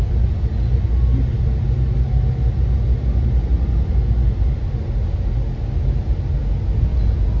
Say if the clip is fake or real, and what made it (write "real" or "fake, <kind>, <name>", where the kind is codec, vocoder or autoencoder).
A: real